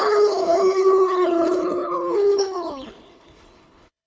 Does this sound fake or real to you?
fake